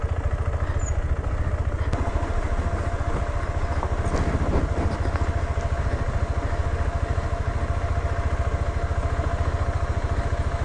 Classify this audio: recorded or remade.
recorded